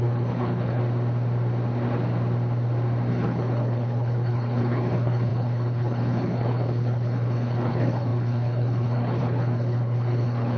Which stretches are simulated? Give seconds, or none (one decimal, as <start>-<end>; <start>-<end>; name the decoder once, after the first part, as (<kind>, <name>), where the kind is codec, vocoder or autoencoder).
0.0-0.8 (codec, HILCodec); 3.1-10.6